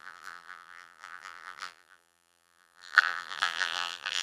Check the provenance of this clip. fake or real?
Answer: fake